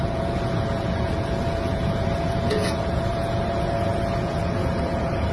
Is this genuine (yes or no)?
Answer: no